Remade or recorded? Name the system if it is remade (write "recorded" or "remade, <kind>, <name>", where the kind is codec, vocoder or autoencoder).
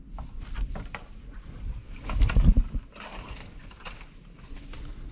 recorded